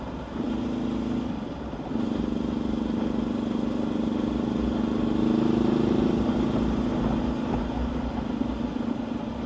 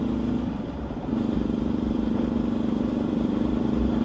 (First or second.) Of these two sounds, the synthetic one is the second